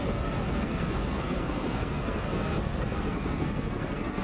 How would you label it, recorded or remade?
remade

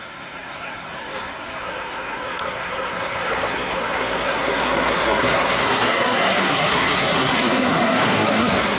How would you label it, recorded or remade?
remade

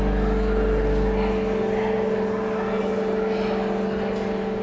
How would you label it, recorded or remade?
recorded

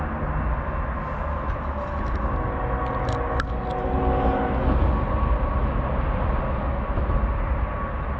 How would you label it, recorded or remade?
recorded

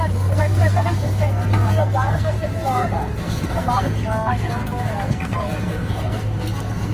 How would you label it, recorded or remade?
remade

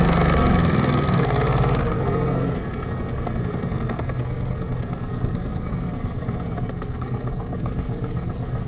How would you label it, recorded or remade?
remade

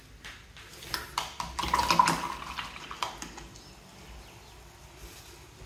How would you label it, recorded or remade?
recorded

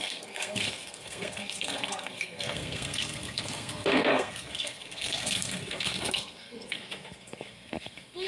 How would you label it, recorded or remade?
remade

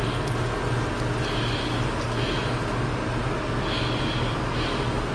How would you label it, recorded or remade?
recorded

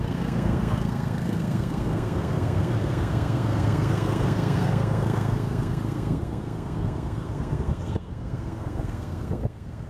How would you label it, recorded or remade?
remade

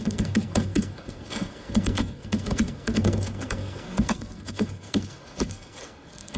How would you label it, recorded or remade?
remade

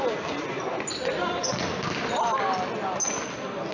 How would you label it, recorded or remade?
recorded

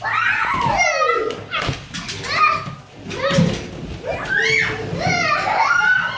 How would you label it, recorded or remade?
recorded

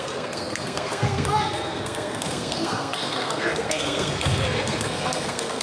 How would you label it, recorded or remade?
remade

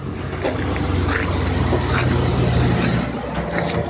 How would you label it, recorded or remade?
recorded